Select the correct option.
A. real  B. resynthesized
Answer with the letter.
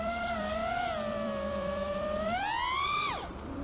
B